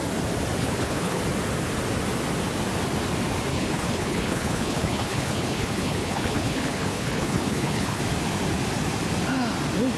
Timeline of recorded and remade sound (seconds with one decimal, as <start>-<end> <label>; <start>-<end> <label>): 0.0-0.6 recorded; 0.6-1.2 remade; 1.2-3.5 recorded; 3.5-8.0 remade; 8.0-10.0 recorded